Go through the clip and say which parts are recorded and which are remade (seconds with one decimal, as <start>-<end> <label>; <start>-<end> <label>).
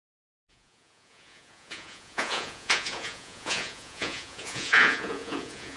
0.0-5.8 remade